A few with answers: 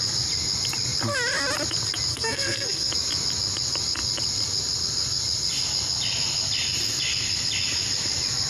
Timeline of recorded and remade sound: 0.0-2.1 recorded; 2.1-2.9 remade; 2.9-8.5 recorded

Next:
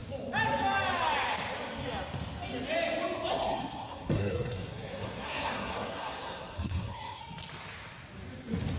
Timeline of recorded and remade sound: 0.0-3.3 recorded; 3.3-7.2 remade; 7.2-8.8 recorded